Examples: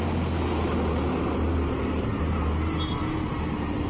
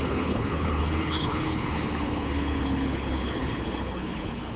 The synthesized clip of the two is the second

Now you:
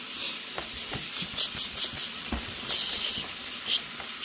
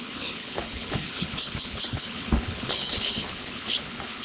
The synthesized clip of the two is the second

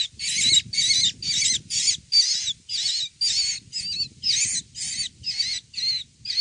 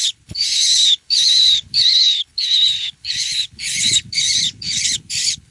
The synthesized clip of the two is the second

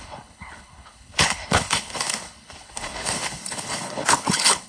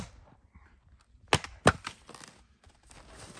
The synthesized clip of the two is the first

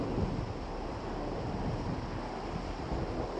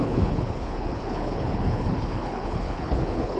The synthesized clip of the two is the second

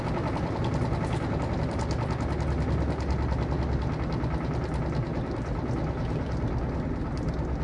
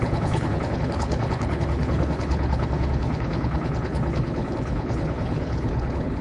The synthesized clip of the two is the second